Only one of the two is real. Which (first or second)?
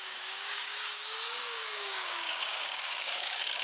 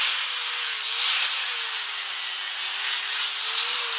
second